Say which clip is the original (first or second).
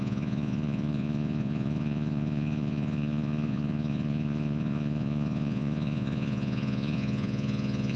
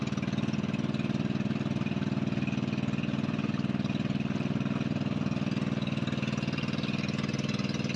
second